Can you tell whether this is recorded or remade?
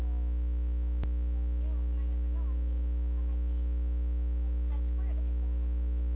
recorded